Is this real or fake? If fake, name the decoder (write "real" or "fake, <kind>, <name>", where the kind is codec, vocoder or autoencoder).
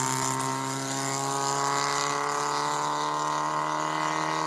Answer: real